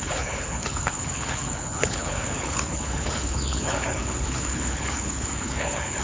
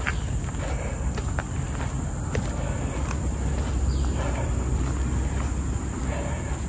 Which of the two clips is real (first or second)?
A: second